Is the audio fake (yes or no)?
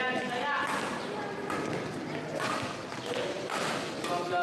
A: no